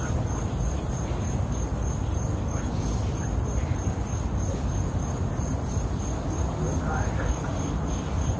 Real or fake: real